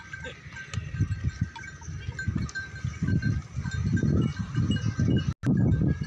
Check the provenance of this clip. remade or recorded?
recorded